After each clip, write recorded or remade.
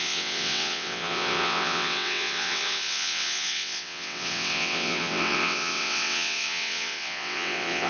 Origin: remade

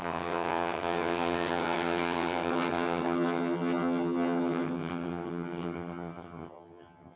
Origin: remade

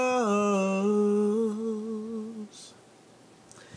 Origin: recorded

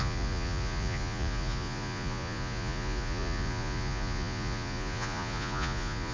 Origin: remade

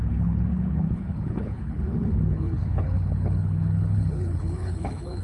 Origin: remade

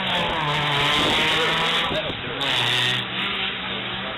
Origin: recorded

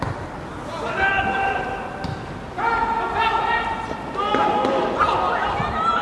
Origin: recorded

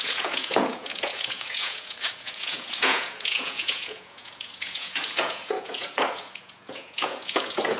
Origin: remade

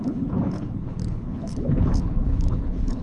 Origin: remade